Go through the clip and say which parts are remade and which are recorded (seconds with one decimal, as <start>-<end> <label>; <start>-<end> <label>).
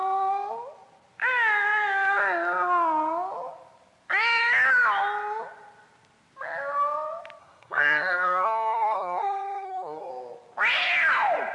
0.0-7.4 recorded; 7.4-10.1 remade; 10.1-11.5 recorded